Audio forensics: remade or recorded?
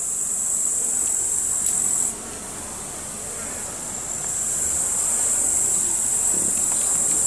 recorded